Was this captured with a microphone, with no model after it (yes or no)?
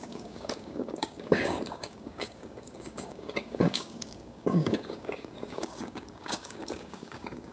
no